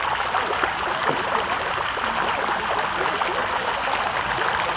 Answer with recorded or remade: recorded